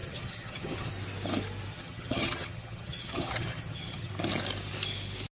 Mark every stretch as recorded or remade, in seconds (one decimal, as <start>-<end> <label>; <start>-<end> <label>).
0.0-0.9 remade; 0.9-1.7 recorded; 1.7-4.1 remade; 4.1-5.4 recorded